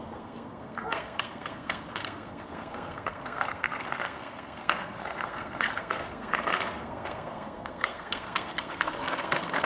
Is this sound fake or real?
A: fake